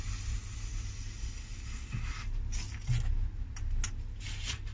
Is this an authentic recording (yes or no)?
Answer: yes